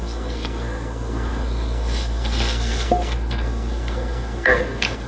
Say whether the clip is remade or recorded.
remade